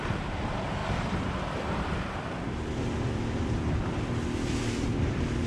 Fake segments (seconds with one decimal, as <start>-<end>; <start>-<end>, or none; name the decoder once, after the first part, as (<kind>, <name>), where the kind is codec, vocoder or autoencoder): 0.8-4.1 (vocoder, BigVGAN v2)